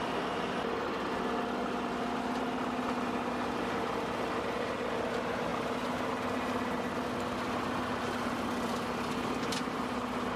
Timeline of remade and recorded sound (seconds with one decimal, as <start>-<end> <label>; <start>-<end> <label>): 0.0-10.4 recorded